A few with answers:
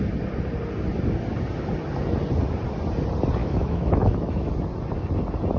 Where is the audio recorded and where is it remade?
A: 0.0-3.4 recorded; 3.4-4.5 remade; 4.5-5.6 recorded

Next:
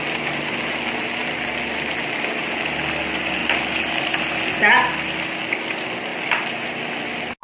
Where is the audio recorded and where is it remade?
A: 0.0-1.2 recorded; 1.2-2.0 remade; 2.0-7.4 recorded

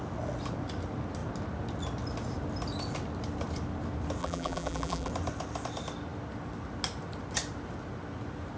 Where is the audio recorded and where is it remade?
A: 0.0-4.2 recorded; 4.2-5.1 remade; 5.1-8.6 recorded

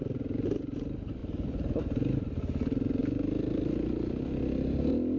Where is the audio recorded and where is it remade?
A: 0.0-5.2 recorded